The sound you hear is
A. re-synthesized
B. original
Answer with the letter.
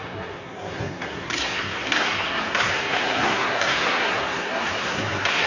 A